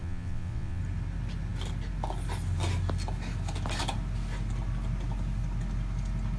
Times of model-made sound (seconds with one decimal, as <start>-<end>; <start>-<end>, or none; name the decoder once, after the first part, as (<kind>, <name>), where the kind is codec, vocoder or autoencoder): 0.0-0.8 (vocoder, WaveNeXt)